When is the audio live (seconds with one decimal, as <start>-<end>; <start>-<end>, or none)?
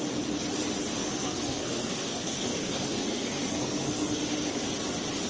0.0-1.0; 4.2-5.3